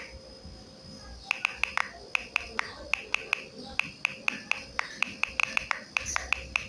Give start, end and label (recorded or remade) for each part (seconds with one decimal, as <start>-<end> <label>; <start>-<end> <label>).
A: 0.0-5.4 recorded; 5.4-6.1 remade; 6.1-6.7 recorded